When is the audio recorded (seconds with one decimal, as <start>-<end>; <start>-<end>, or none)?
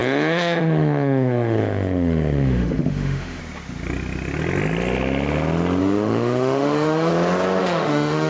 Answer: 3.4-5.8; 7.1-7.6